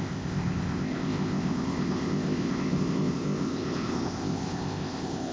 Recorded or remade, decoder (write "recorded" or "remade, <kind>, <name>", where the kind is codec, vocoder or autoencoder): remade, codec, ZipCodec